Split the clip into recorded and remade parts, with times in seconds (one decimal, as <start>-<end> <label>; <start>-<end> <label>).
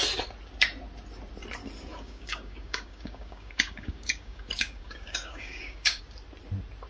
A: 0.0-1.9 recorded; 1.9-6.0 remade; 6.0-6.9 recorded